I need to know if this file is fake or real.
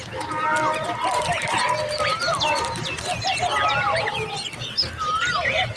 real